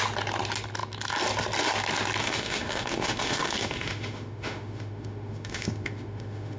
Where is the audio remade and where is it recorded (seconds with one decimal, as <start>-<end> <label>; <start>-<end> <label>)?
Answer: 0.0-2.2 recorded; 2.2-6.6 remade